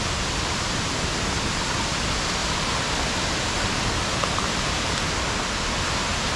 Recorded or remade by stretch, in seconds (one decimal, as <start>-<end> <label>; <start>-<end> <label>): 0.0-6.4 recorded